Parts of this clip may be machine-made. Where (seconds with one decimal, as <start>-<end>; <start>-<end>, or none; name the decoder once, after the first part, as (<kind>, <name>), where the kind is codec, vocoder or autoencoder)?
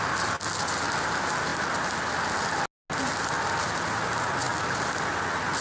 none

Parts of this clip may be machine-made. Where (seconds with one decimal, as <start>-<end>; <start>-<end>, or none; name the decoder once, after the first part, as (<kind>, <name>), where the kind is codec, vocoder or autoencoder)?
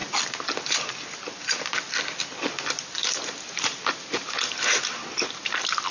3.0-4.3 (vocoder, BigVGAN v2)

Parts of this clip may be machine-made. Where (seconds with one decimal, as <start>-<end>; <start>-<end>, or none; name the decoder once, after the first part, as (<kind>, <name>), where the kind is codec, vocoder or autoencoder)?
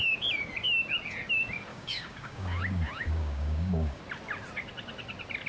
1.7-4.0 (codec, DAC)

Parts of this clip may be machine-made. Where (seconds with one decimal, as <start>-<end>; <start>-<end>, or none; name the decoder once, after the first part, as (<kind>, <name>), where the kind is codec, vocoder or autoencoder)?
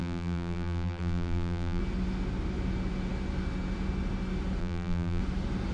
0.0-1.8 (vocoder, BigVGAN v2); 4.6-5.2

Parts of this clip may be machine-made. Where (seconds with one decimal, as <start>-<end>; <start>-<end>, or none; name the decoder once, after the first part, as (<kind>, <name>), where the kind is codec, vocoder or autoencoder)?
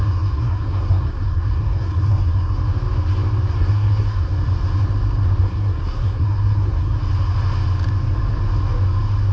0.0-2.6 (codec, SNAC); 3.6-4.3; 5.4-6.9